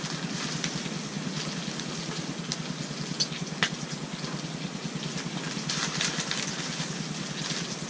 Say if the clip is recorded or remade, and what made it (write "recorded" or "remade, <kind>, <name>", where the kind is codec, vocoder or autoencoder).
recorded